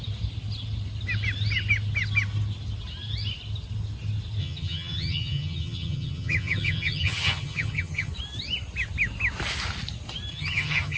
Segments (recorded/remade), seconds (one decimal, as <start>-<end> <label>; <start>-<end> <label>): 0.0-4.4 recorded; 4.4-8.1 remade; 8.1-10.3 recorded; 10.3-11.0 remade